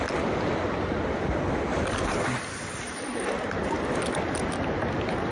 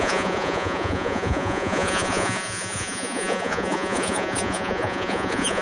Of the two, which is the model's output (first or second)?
second